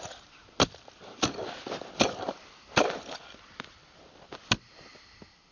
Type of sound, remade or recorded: recorded